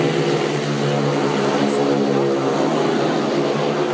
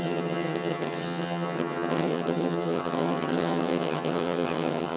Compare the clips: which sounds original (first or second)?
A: first